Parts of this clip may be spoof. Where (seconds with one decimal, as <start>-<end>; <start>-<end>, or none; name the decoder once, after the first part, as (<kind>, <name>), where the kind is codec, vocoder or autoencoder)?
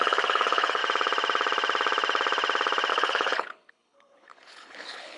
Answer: 0.0-0.8 (codec, HILCodec); 2.9-5.2